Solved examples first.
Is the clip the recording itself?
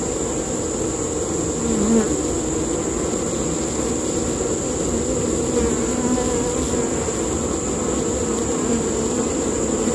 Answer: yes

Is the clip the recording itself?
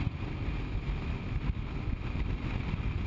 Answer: yes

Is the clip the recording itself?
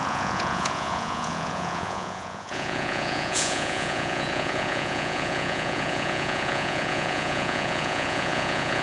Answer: no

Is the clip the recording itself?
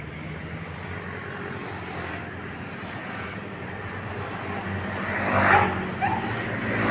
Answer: yes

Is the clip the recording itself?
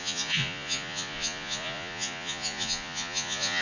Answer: no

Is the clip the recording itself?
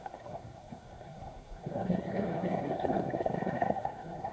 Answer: no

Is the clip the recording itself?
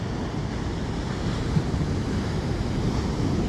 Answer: yes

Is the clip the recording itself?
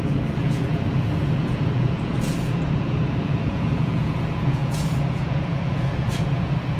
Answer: no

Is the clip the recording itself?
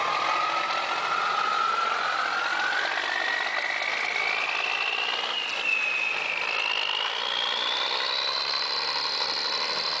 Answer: yes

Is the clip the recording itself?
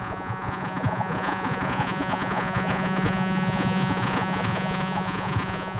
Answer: no